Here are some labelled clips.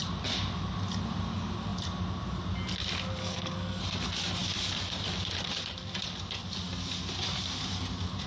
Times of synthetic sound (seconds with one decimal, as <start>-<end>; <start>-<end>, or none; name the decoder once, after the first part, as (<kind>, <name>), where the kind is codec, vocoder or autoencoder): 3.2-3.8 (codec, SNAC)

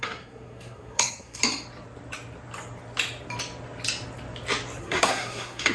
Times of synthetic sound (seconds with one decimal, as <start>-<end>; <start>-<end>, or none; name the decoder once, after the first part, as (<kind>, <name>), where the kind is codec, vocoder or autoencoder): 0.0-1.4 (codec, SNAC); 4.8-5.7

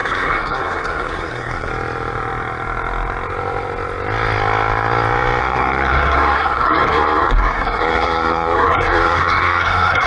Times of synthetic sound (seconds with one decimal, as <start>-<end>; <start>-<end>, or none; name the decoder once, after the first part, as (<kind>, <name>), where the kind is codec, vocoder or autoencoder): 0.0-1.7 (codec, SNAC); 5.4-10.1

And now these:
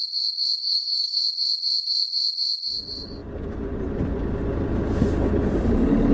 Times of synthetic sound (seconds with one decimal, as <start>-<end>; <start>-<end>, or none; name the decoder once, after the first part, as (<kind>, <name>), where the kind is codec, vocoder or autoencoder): 0.6-1.2 (codec, SNAC)

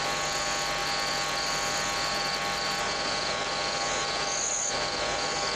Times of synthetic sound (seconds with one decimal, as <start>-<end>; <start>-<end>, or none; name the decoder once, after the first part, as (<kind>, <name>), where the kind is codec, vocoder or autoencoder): none